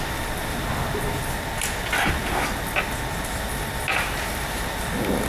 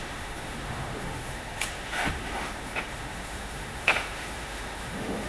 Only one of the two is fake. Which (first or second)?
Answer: second